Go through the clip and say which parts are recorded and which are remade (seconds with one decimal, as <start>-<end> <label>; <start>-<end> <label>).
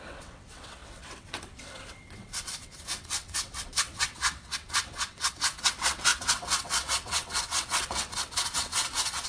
0.0-9.3 remade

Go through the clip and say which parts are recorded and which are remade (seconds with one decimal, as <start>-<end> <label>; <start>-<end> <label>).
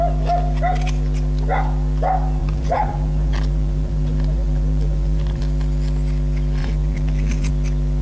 0.0-2.4 recorded; 2.4-5.4 remade; 5.4-6.6 recorded; 6.6-7.5 remade; 7.5-8.0 recorded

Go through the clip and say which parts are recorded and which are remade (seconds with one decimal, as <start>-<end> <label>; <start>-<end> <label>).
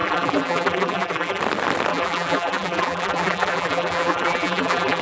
0.0-1.4 remade; 1.4-1.9 recorded; 1.9-5.0 remade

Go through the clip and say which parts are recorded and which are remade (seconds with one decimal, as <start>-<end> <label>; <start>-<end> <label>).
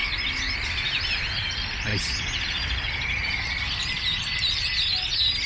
0.0-5.5 recorded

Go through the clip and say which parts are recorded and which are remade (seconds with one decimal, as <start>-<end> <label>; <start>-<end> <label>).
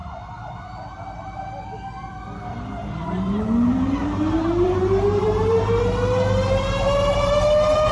0.0-3.0 recorded; 3.0-5.8 remade; 5.8-7.9 recorded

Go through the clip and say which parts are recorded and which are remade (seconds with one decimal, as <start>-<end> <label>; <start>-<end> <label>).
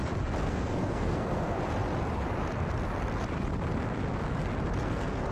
0.0-0.5 recorded; 0.5-1.6 remade; 1.6-4.8 recorded; 4.8-5.3 remade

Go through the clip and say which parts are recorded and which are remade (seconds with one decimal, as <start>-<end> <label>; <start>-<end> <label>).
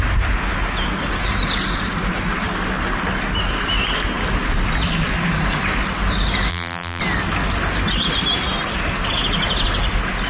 0.0-6.5 recorded; 6.5-7.0 remade; 7.0-10.3 recorded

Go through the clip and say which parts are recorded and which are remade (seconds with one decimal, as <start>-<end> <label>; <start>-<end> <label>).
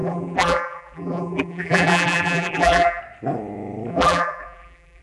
0.0-3.0 remade; 3.0-3.9 recorded; 3.9-5.0 remade